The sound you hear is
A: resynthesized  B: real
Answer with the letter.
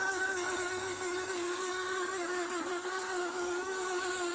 A